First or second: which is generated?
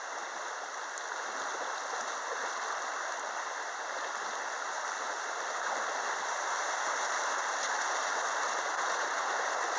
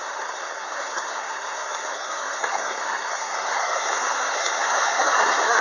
second